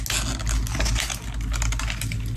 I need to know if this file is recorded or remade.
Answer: recorded